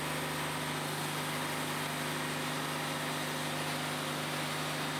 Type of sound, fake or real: real